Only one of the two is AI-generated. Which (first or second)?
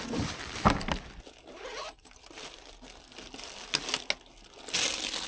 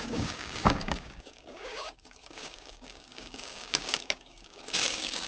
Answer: second